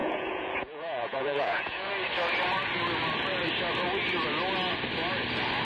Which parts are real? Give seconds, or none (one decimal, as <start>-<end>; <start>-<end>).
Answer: 1.9-5.6

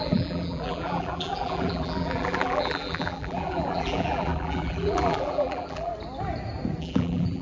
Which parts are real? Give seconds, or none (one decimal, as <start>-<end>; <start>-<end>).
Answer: 5.9-6.8

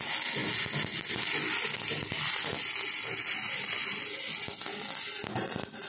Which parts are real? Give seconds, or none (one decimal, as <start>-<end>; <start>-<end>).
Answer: 0.0-5.9

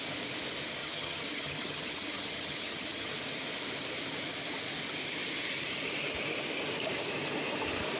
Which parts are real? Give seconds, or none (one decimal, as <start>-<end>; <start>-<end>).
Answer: 0.0-0.8; 3.1-8.0

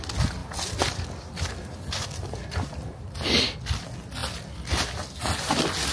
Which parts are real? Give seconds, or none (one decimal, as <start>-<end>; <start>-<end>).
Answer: 0.0-5.9

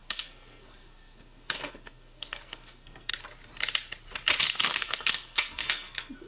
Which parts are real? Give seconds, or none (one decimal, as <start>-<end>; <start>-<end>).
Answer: 3.1-4.4